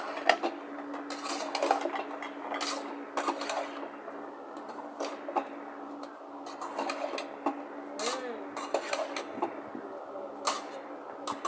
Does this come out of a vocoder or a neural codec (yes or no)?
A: no